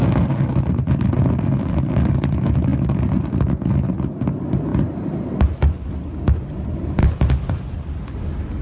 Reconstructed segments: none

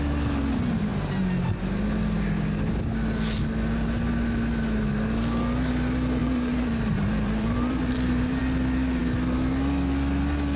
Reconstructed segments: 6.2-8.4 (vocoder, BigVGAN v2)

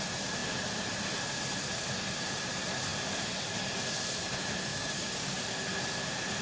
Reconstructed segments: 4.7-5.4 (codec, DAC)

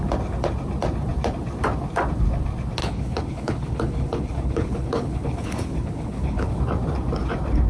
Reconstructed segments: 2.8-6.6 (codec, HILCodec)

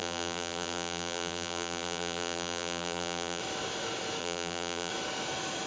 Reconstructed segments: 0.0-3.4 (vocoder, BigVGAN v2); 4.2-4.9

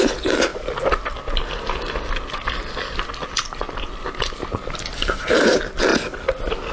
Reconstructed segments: none